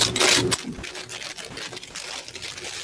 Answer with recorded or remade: recorded